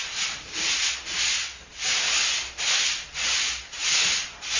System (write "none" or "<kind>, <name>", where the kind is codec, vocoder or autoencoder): none